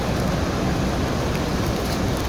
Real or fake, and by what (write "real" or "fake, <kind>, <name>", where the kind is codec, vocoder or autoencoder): real